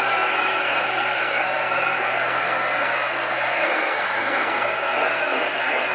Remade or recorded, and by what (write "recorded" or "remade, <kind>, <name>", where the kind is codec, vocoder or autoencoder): remade, codec, SNAC